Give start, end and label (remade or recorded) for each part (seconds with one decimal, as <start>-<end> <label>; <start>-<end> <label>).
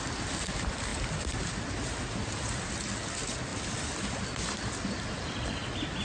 0.0-6.0 recorded